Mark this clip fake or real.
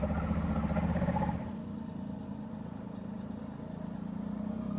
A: real